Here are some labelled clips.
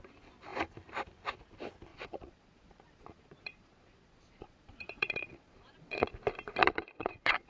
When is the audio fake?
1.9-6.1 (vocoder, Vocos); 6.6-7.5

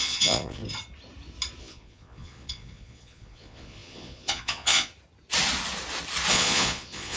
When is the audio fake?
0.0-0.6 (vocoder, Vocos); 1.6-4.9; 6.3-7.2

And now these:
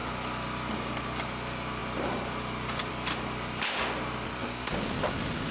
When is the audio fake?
4.3-4.9 (codec, DAC)

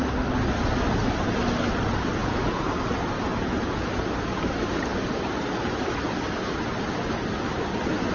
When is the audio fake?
2.2-2.7 (vocoder, Vocos); 3.3-3.9